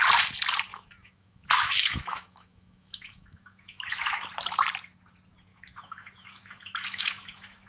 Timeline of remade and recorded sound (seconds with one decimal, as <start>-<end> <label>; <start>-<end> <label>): 0.0-0.7 recorded; 0.7-4.3 remade; 4.3-5.5 recorded; 5.5-7.7 remade